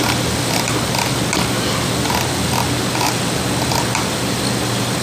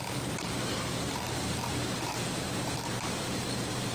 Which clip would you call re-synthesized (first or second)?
second